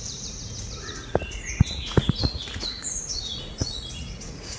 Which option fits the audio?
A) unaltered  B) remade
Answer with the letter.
B